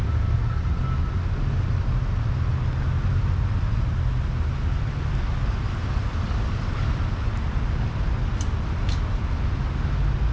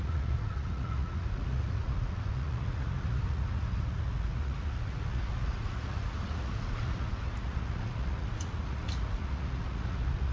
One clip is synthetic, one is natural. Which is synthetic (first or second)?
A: second